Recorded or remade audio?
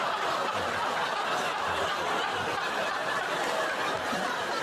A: recorded